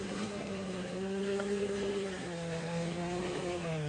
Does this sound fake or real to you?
fake